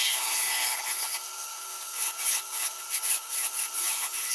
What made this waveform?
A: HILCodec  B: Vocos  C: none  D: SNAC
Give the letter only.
A